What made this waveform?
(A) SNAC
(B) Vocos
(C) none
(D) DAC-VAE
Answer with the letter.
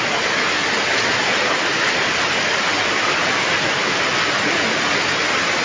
C